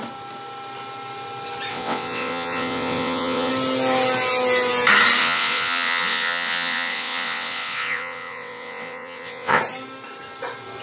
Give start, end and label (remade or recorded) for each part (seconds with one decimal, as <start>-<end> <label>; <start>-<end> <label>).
0.0-1.7 recorded; 1.7-3.5 remade; 3.5-5.2 recorded; 5.2-9.6 remade; 9.6-10.8 recorded